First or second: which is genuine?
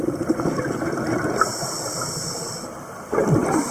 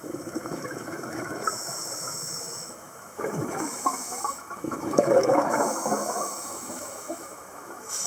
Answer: first